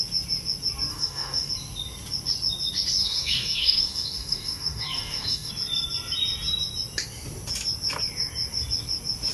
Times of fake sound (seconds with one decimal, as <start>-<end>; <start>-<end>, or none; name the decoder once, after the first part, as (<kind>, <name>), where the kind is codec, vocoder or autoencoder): 0.9-1.5 (codec, DAC); 3.0-5.5